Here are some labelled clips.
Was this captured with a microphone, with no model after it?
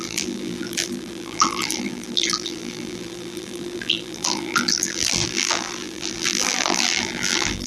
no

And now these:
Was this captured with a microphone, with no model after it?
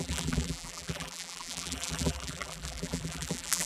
no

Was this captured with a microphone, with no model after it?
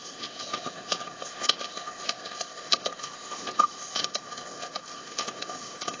no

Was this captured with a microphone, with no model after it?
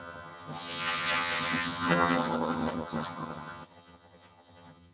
no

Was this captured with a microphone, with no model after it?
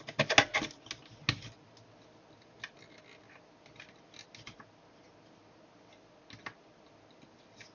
yes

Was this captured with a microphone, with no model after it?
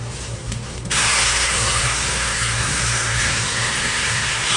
no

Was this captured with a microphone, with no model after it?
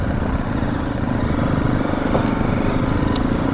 yes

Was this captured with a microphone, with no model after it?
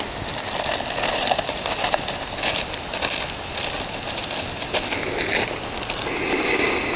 yes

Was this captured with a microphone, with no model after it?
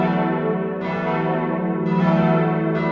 yes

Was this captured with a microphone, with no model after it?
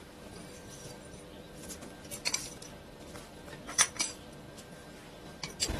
yes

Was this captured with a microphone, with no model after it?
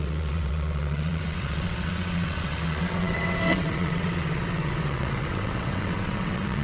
no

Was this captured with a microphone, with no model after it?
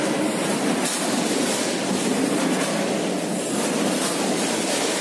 yes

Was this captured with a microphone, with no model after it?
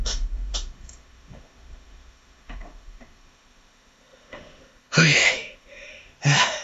no